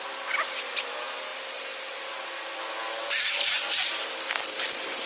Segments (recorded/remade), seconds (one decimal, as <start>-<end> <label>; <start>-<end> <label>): 0.0-5.1 recorded